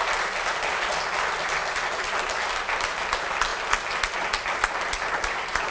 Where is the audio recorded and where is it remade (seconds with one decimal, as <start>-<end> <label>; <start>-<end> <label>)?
0.0-5.7 recorded